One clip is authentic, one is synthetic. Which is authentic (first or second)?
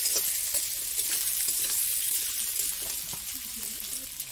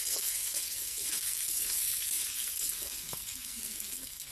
first